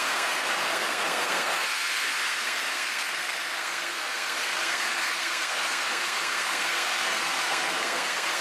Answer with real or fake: fake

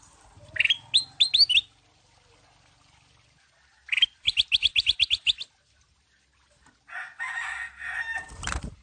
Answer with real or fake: real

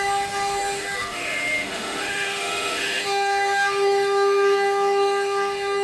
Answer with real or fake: fake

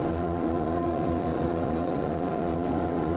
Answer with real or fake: fake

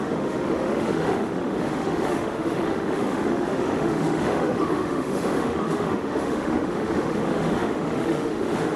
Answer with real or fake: fake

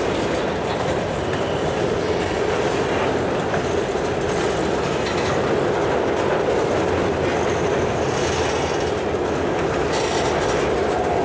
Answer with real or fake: real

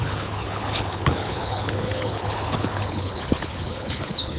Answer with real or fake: fake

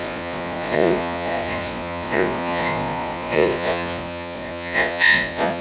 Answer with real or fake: fake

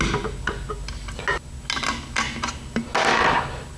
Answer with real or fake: real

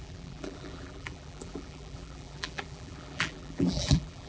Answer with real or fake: fake